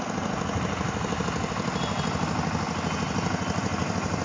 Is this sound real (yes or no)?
yes